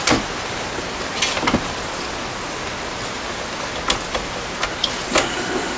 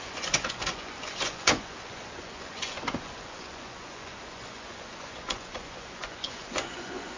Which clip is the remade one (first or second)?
second